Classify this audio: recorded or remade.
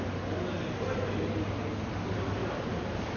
recorded